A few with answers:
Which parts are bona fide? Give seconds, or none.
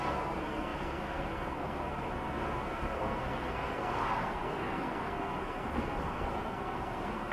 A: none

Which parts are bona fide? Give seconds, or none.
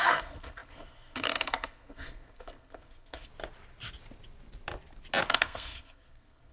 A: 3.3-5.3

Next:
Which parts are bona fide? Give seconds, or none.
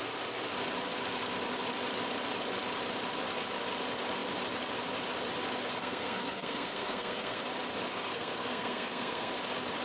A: 0.0-5.8; 7.4-7.9; 9.3-9.8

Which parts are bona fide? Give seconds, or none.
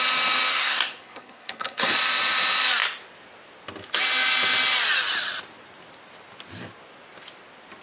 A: 0.0-0.5; 1.9-7.8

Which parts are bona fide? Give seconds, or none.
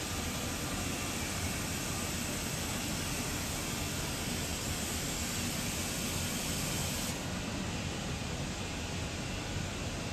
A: 0.0-10.1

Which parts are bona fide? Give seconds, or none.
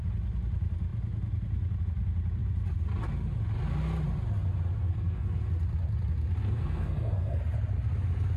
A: 0.0-4.8; 5.5-6.4; 7.4-8.4